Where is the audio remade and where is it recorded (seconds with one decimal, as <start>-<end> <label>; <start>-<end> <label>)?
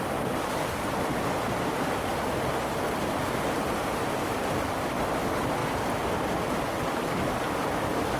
0.0-8.2 recorded